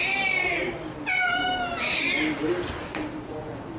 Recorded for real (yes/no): yes